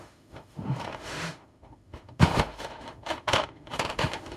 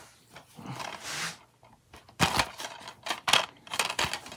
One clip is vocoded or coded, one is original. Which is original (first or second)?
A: second